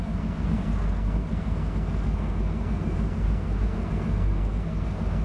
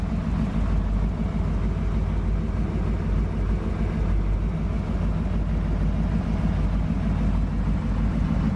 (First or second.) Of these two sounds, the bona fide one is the second